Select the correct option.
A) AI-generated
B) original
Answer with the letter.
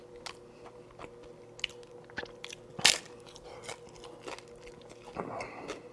B